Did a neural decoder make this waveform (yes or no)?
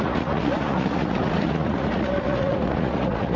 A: yes